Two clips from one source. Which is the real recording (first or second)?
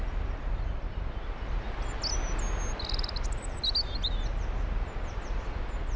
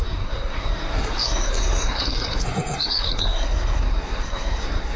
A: first